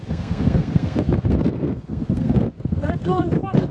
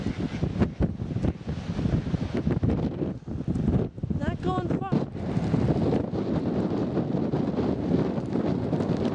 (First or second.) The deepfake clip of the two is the first